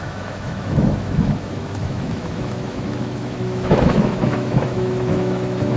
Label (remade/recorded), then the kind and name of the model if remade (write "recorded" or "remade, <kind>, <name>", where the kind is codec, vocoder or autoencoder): remade, autoencoder, DAC-VAE